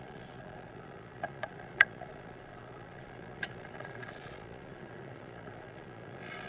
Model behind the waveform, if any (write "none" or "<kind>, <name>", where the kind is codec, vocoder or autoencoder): vocoder, Vocos